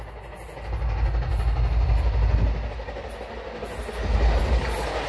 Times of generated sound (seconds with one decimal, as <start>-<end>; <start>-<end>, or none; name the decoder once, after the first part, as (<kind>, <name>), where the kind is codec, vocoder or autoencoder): none